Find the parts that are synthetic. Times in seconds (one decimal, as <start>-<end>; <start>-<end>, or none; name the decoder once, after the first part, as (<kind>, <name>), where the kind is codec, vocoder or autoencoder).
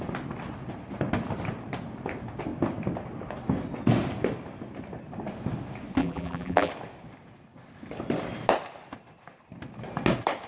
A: 6.0-6.7 (vocoder, BigVGAN v2)